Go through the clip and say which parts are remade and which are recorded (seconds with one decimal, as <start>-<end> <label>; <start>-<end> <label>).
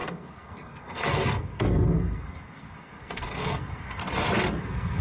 0.0-4.0 remade; 4.0-4.6 recorded; 4.6-5.0 remade